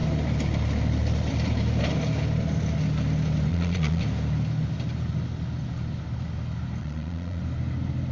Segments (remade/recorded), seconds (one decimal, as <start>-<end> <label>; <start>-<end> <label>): 0.0-3.5 recorded; 3.5-4.0 remade; 4.0-6.8 recorded; 6.8-7.4 remade; 7.4-8.1 recorded